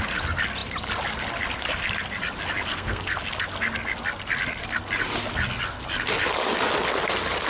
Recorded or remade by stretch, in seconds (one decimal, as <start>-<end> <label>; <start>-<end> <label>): 0.0-2.7 recorded; 2.7-3.2 remade; 3.2-7.5 recorded